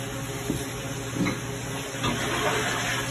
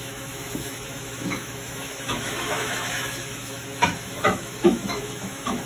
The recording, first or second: first